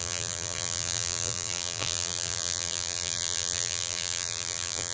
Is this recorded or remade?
remade